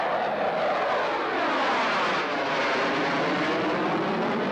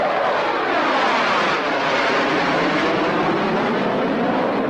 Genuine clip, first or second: first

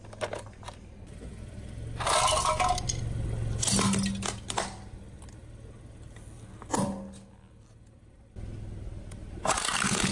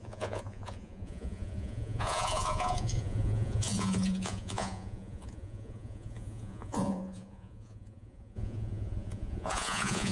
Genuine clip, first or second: first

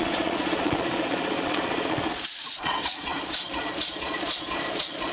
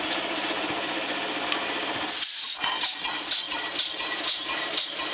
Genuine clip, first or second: second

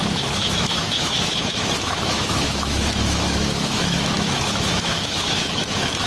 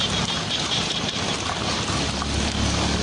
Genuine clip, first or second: second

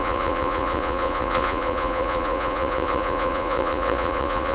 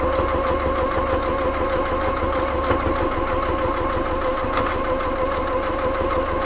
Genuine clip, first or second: second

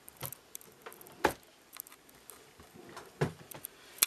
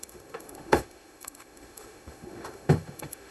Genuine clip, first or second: first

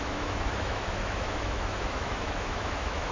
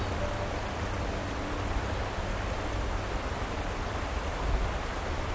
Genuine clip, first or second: second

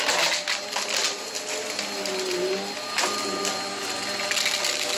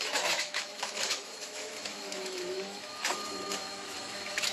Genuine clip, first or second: first